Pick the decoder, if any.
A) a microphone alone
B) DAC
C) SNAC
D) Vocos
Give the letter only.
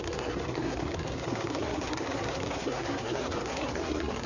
C